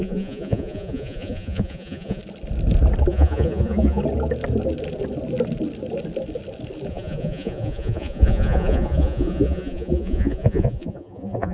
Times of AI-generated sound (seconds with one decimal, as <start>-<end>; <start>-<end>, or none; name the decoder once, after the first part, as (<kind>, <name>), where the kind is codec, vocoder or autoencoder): 0.0-2.2 (vocoder, Vocos); 3.1-4.0; 6.9-11.5